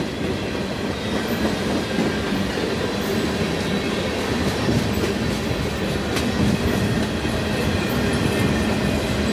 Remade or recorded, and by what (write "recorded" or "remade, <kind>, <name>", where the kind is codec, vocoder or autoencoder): recorded